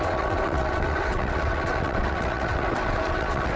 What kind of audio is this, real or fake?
fake